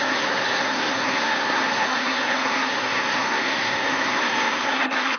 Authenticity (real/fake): fake